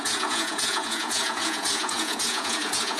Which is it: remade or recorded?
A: remade